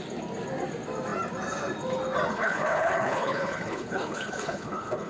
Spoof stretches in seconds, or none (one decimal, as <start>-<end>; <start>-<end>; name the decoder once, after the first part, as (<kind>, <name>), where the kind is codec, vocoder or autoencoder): 2.3-5.1 (codec, HILCodec)